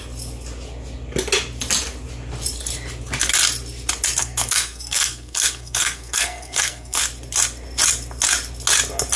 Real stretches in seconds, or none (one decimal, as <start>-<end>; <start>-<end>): 0.0-4.2; 7.0-9.2